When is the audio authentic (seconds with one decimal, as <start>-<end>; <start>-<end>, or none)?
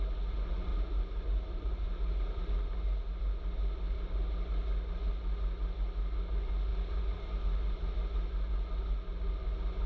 0.0-0.7; 2.4-6.7; 7.9-9.9